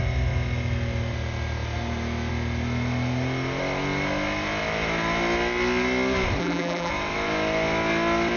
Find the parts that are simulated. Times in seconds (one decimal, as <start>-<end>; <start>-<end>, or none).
6.4-6.9